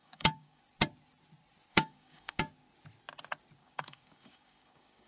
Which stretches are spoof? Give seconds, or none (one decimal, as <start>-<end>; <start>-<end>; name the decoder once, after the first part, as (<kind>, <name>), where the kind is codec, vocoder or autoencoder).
0.0-0.6 (codec, DAC); 1.7-2.4; 3.6-5.1